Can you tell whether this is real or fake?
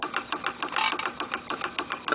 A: real